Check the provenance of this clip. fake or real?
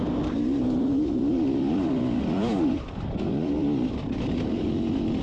fake